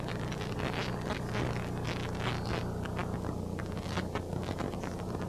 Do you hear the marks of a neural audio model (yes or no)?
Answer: no